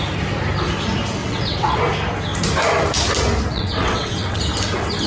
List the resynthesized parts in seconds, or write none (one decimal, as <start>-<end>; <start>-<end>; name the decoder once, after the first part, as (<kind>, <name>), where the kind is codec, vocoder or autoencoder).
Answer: 1.2-1.8 (vocoder, WaveNeXt); 3.5-4.4